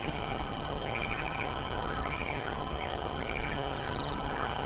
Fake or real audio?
fake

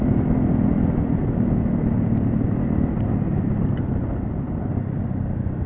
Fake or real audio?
real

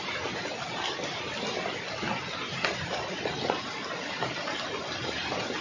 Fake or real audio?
real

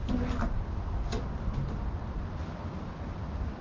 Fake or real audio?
real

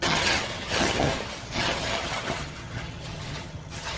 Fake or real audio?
fake